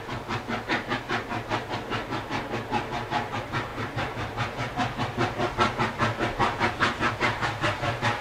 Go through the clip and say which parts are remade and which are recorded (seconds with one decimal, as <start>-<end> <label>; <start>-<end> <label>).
0.0-8.2 recorded